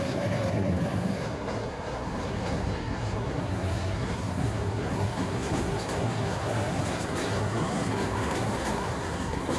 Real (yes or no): no